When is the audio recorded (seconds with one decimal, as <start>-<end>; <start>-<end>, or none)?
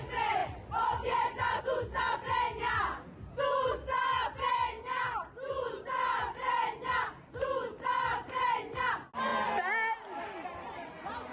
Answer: 0.0-0.4; 1.6-11.3